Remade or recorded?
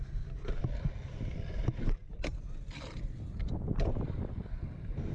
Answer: recorded